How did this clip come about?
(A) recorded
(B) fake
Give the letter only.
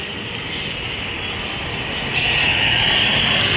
A